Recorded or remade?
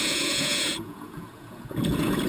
remade